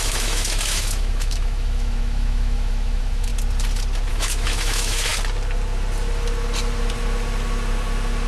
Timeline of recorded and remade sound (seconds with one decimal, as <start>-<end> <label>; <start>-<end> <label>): 0.0-3.3 remade; 3.3-4.1 recorded; 4.1-5.1 remade; 5.1-8.3 recorded